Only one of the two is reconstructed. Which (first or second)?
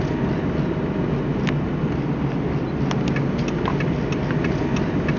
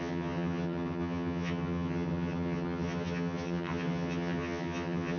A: second